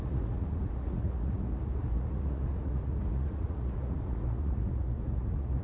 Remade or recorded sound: remade